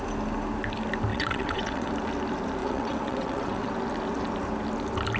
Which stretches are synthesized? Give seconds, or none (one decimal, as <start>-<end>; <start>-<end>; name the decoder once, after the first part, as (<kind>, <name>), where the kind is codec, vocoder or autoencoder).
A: 1.1-1.9 (vocoder, WaveNeXt); 2.6-3.7